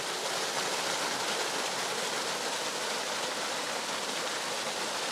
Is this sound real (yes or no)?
yes